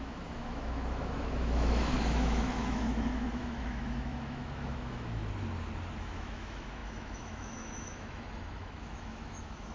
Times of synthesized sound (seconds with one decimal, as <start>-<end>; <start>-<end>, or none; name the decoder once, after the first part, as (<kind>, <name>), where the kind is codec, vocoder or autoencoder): 0.0-5.2 (autoencoder, DAC-VAE); 6.0-9.7